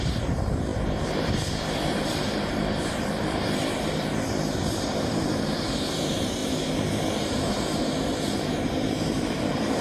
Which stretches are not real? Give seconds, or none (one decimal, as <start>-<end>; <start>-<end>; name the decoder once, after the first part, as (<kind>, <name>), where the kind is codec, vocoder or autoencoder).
0.0-6.4 (vocoder, BigVGAN v2); 7.1-9.8